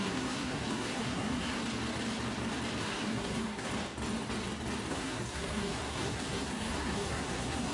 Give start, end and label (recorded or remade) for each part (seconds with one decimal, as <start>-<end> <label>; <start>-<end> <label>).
0.0-1.6 remade; 1.6-2.8 recorded; 2.8-3.7 remade; 3.7-4.9 recorded; 4.9-7.7 remade